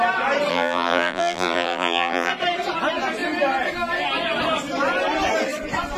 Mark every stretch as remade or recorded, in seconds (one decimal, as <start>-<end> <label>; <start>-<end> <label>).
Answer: 0.0-0.5 recorded; 0.5-2.3 remade; 2.3-6.0 recorded